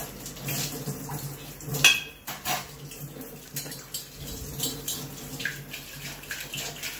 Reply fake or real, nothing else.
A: real